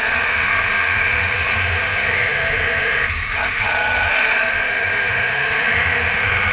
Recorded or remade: remade